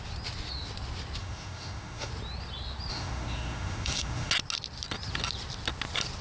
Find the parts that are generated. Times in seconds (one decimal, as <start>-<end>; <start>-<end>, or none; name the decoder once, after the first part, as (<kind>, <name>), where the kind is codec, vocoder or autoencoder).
1.2-2.1 (autoencoder, DAC-VAE); 2.9-4.3